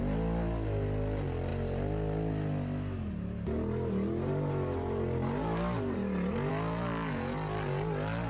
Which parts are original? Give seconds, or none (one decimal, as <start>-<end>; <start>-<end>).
0.0-8.3